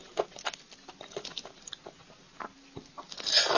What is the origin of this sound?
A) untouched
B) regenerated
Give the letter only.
A